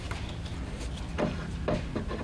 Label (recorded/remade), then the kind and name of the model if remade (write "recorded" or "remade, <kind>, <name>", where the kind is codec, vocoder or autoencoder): recorded